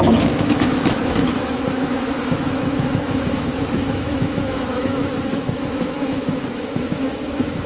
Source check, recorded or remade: remade